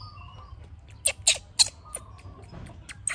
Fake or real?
real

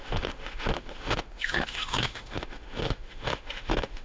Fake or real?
fake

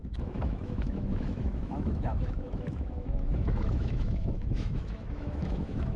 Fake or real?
fake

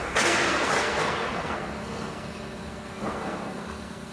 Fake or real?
fake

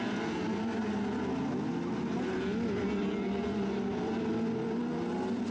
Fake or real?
real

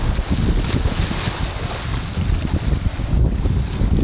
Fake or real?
real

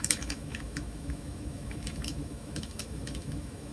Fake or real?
fake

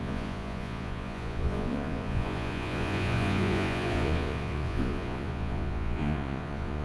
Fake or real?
fake